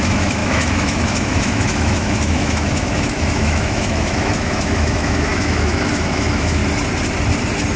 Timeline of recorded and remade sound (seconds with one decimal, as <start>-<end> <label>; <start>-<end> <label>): 0.0-6.6 remade; 6.6-7.8 recorded